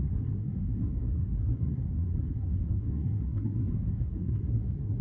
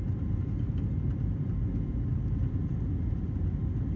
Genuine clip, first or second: second